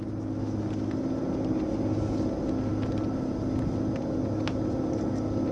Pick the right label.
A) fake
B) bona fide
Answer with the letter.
B